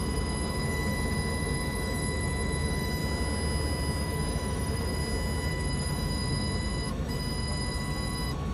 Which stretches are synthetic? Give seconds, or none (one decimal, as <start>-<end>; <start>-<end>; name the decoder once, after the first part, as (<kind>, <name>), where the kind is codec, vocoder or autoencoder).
0.0-3.0 (autoencoder, DAC-VAE); 4.0-5.0; 5.5-8.5